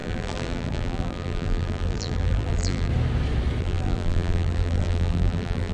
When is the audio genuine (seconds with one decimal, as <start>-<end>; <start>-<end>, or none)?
2.9-3.6